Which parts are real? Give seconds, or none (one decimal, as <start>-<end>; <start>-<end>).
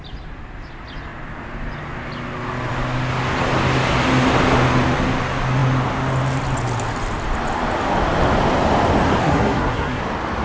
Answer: 0.0-9.2; 10.0-10.4